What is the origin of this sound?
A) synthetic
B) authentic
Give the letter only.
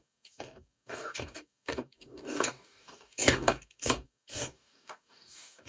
A